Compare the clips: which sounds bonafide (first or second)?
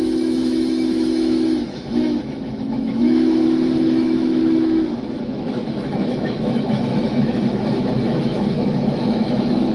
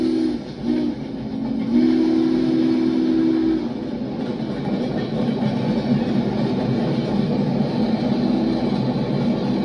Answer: second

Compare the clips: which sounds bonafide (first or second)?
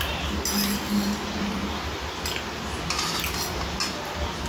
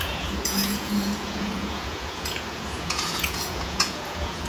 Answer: first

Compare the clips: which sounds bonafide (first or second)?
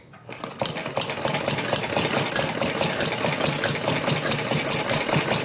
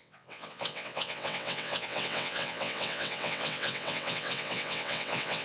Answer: first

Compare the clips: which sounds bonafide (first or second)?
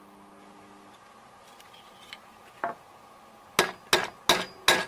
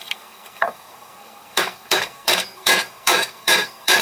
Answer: first